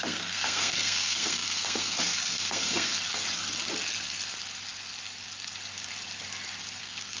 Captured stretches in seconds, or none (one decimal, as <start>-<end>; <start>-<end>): 2.9-6.8